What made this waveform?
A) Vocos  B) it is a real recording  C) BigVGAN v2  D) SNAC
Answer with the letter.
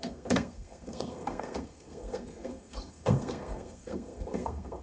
D